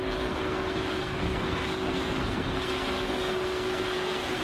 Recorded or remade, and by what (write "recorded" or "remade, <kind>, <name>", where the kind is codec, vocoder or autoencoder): remade, codec, SNAC